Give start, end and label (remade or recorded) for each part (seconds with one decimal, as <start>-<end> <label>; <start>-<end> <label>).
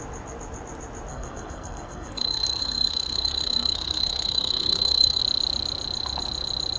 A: 0.0-1.1 recorded; 1.1-5.2 remade; 5.2-6.8 recorded